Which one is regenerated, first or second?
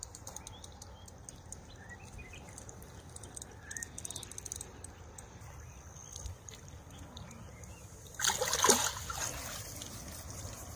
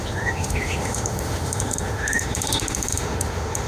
second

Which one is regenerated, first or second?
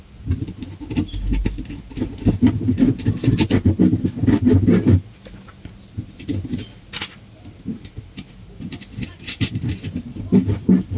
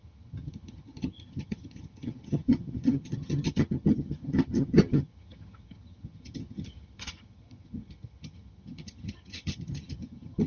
second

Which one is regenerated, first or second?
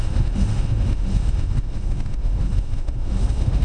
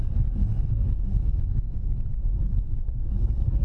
first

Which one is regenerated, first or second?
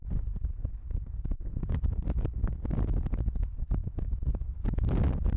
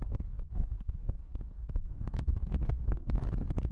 second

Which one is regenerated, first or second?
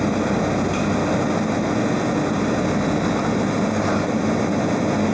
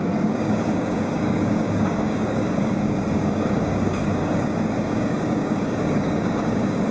second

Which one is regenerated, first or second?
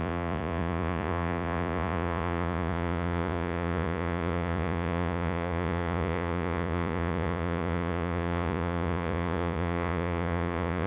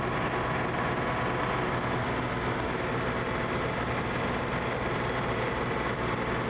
first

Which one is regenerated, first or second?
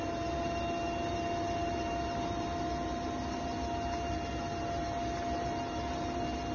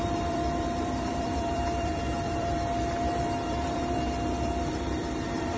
second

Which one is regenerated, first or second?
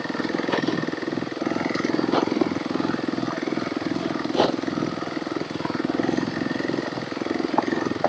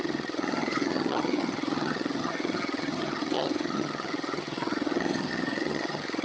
second